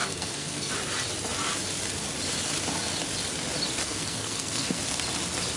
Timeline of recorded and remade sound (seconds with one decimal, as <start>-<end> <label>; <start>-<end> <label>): 0.0-0.7 remade; 0.7-3.8 recorded; 3.8-4.8 remade; 4.8-5.6 recorded